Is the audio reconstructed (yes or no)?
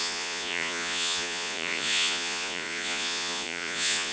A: yes